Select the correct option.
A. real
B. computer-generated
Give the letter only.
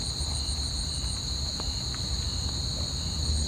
A